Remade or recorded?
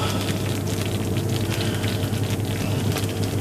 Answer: recorded